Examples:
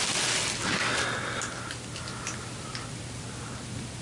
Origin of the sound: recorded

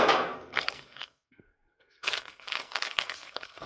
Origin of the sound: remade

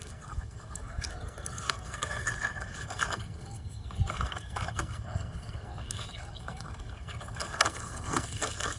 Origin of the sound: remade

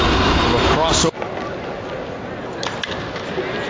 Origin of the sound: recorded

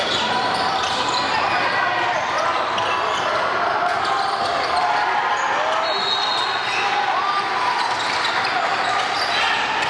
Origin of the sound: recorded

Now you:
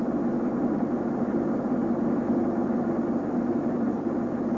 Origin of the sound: recorded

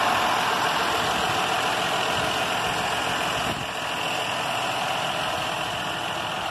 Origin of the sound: recorded